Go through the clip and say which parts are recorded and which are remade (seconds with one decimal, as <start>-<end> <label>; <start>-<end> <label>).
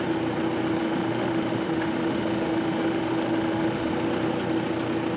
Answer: 0.0-0.8 recorded; 0.8-3.9 remade; 3.9-5.2 recorded